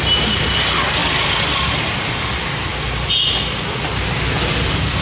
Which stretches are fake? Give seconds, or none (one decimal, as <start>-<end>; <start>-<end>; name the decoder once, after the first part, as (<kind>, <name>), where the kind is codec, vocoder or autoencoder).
none